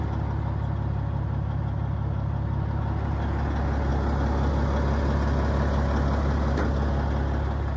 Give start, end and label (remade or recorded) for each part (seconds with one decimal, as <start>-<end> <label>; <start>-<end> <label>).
0.0-7.8 recorded